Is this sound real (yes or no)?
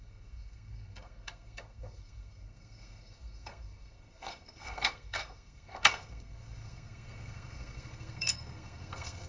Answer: no